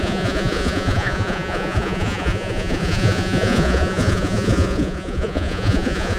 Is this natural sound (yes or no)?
no